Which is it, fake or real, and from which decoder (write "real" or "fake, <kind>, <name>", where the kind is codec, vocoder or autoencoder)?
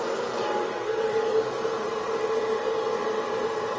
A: real